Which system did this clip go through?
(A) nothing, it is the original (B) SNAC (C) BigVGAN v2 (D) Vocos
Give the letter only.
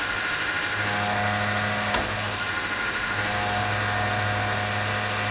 A